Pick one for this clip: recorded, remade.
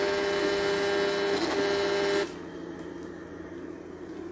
recorded